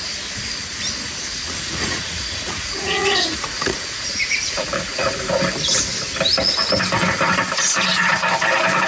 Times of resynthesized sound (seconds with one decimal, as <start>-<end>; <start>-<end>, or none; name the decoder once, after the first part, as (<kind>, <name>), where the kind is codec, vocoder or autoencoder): 1.3-5.2 (vocoder, Vocos)